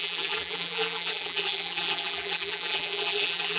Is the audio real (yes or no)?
no